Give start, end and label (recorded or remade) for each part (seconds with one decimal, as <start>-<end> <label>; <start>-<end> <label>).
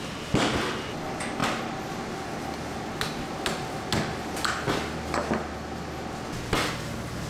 0.0-7.3 recorded